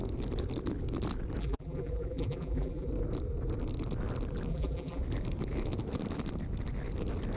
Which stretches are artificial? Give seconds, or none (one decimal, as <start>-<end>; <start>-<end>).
1.4-2.9; 4.5-5.0